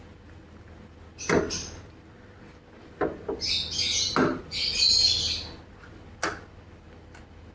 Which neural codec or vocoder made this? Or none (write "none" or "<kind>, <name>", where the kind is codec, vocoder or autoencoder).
none